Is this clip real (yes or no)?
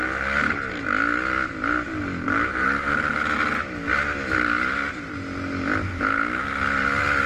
yes